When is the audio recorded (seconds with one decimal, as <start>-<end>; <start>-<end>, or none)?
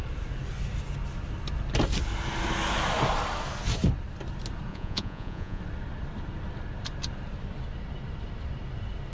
0.0-4.7; 5.6-9.1